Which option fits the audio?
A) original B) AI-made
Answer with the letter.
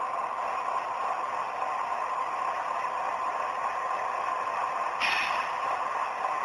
A